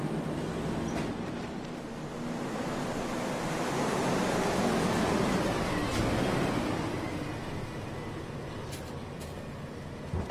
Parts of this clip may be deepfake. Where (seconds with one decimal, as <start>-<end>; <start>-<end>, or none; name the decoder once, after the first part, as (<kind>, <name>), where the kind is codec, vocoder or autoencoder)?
none